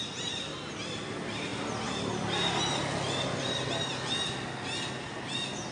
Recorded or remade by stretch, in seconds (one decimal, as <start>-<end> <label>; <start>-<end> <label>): 0.0-5.7 recorded